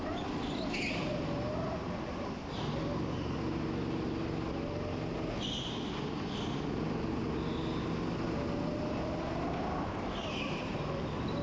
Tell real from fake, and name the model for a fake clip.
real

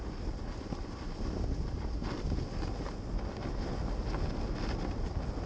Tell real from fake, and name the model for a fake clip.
real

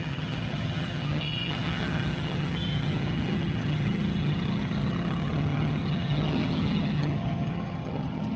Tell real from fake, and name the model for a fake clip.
fake, vocoder, HiFi-GAN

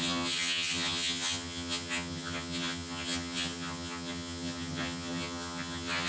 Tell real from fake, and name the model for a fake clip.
fake, vocoder, HiFi-GAN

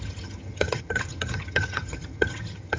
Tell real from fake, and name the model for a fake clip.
fake, vocoder, HiFi-GAN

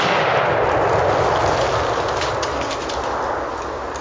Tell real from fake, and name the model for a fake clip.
real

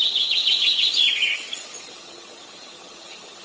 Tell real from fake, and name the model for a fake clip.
fake, vocoder, HiFi-GAN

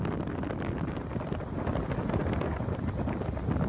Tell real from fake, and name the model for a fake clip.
real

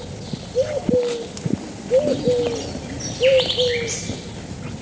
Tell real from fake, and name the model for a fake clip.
real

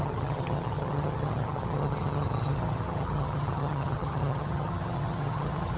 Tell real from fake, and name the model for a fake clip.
fake, vocoder, HiFi-GAN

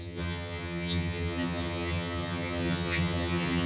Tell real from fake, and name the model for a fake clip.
fake, vocoder, HiFi-GAN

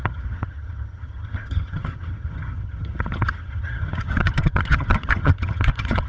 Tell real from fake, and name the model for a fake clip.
fake, vocoder, HiFi-GAN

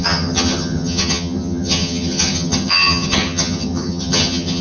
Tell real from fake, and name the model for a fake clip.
fake, vocoder, HiFi-GAN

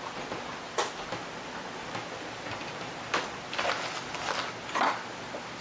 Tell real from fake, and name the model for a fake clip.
real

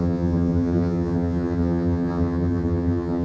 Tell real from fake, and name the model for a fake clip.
fake, vocoder, HiFi-GAN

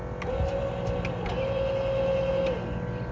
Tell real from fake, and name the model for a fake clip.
real